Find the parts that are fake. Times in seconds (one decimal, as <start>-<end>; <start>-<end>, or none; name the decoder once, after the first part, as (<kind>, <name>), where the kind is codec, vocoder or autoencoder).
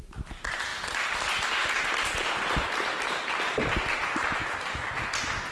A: none